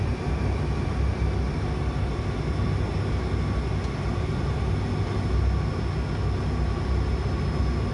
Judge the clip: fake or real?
real